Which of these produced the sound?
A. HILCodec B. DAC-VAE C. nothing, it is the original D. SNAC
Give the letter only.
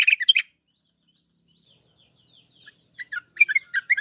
C